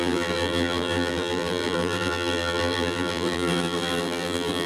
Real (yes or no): no